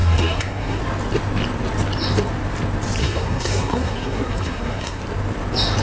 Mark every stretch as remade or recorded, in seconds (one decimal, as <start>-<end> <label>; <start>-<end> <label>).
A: 0.0-0.8 remade; 0.8-3.0 recorded; 3.0-5.0 remade; 5.0-5.8 recorded